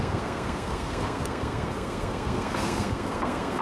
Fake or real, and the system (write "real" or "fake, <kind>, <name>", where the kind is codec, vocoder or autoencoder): fake, codec, SNAC